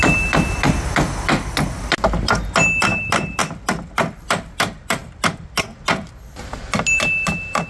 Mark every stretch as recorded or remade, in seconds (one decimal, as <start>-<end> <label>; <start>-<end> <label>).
0.0-2.9 recorded; 2.9-3.4 remade; 3.4-7.7 recorded